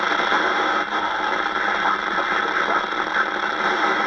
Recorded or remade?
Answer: recorded